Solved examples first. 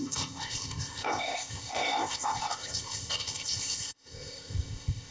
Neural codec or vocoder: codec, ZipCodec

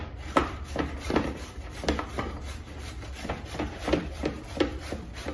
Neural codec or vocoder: none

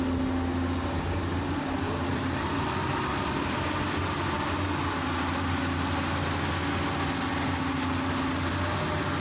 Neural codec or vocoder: none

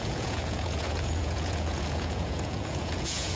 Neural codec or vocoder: vocoder, Vocos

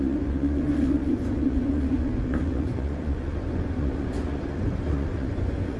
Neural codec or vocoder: vocoder, Vocos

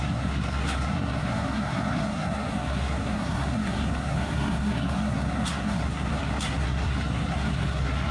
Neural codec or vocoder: codec, SNAC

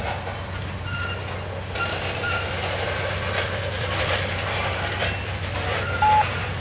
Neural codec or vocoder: none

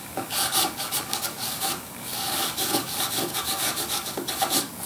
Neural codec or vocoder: codec, DAC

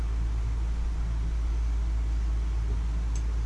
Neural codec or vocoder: none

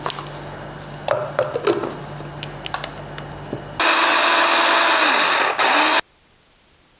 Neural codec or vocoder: none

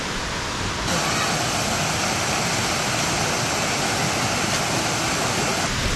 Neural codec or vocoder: none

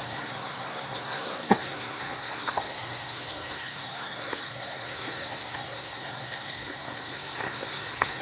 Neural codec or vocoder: codec, SNAC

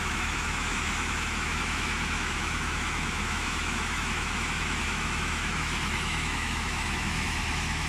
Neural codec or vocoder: autoencoder, DAC-VAE